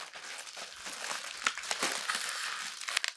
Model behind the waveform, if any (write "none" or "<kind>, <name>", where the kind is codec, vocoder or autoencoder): none